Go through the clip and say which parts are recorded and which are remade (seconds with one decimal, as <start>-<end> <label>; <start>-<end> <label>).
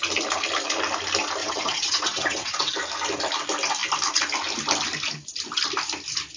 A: 0.0-1.4 recorded; 1.4-2.7 remade; 2.7-6.4 recorded